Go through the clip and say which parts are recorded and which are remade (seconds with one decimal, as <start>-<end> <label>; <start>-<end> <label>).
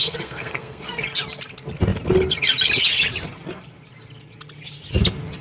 0.0-1.0 remade; 1.0-5.4 recorded